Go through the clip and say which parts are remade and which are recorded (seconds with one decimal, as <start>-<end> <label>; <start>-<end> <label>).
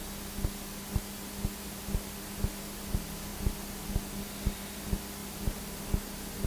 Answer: 0.0-6.5 recorded